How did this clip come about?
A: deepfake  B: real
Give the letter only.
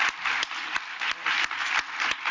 B